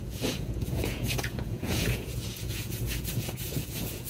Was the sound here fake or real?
fake